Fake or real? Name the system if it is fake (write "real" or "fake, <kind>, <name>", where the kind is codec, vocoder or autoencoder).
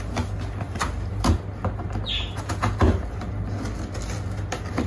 real